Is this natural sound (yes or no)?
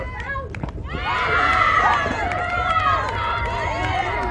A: yes